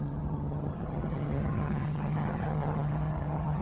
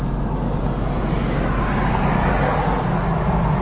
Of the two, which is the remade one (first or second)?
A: first